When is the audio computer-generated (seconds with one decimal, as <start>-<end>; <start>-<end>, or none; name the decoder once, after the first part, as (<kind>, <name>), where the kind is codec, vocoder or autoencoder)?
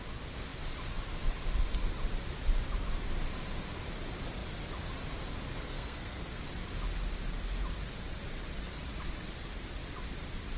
5.5-6.4 (codec, SNAC)